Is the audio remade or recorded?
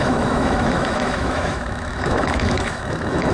remade